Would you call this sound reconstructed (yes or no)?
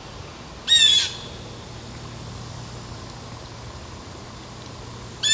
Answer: no